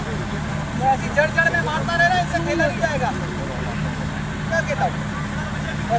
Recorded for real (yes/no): yes